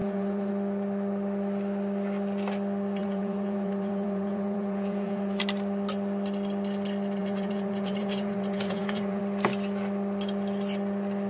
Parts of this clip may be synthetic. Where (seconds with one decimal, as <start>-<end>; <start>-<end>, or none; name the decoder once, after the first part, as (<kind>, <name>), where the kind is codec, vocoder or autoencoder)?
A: 0.0-0.5 (vocoder, Vocos); 3.0-5.4; 7.2-9.2